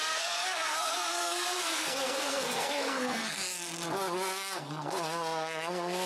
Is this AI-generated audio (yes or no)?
yes